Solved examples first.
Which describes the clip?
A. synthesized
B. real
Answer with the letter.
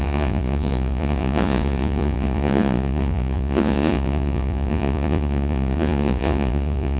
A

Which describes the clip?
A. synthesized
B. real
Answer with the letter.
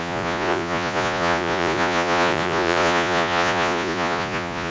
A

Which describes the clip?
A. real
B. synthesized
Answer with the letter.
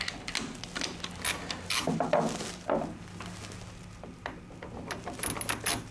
A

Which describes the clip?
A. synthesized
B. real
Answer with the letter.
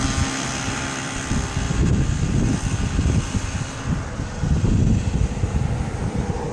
B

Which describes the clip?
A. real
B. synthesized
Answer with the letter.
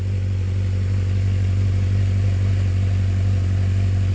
A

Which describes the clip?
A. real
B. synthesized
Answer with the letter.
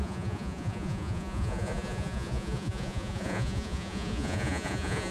B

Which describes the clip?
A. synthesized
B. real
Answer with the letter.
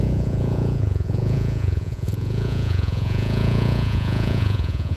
A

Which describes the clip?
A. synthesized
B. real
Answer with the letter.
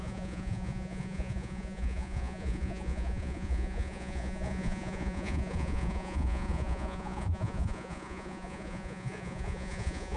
A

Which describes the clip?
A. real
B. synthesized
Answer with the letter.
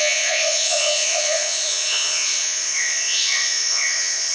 B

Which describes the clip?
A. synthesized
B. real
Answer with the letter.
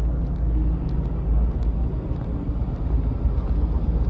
B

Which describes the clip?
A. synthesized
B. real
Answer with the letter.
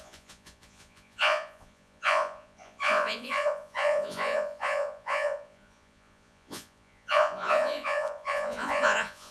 A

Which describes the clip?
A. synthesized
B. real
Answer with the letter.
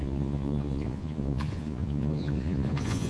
A